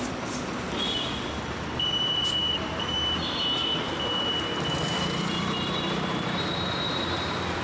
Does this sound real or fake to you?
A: fake